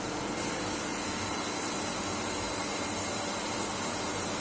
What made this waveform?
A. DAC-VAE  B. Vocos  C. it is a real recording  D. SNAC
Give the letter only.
C